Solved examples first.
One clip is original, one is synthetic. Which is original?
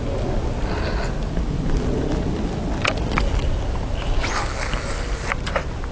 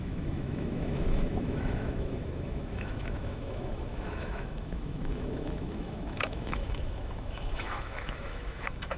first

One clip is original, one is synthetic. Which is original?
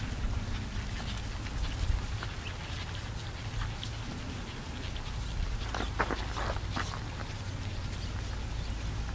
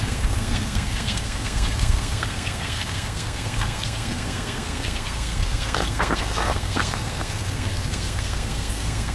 first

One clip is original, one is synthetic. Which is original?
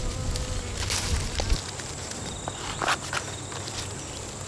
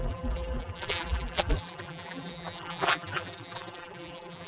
first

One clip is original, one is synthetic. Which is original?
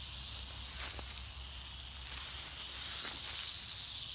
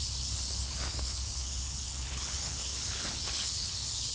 first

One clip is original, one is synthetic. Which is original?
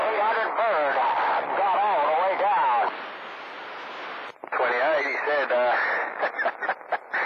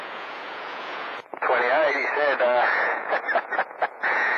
first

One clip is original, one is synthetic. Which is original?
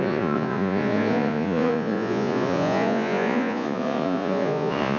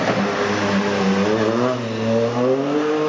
second